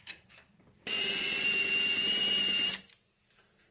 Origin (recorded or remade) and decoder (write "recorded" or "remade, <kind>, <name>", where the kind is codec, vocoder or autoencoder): recorded